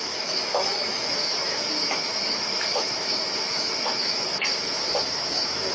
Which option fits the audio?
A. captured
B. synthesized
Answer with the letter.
B